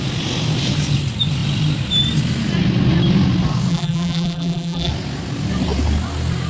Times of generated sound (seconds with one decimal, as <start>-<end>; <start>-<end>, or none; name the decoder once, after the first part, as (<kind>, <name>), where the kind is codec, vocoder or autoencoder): 3.7-4.9 (vocoder, BigVGAN v2)